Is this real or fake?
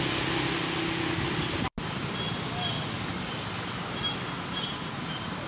real